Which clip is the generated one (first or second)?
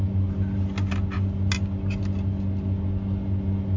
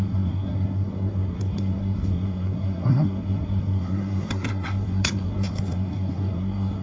second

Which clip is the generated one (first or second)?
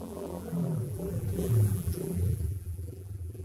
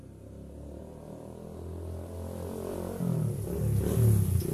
first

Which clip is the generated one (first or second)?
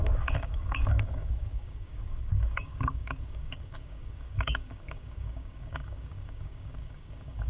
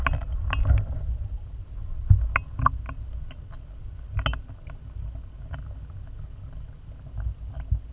first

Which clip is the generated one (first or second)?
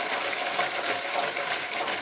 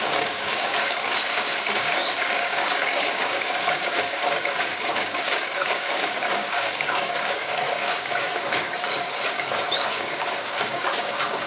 second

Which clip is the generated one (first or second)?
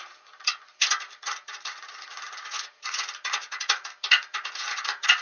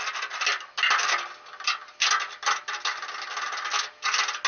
first